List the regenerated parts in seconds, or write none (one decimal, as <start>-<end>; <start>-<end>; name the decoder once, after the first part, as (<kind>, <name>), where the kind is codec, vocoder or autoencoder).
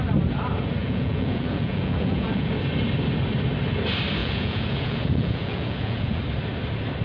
0.8-2.5 (vocoder, Vocos); 4.2-6.2